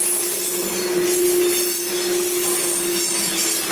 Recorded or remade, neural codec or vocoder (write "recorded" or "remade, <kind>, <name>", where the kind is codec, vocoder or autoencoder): recorded